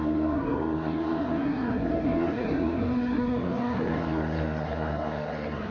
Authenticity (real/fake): fake